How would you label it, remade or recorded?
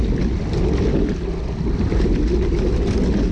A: recorded